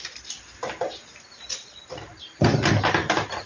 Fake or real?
fake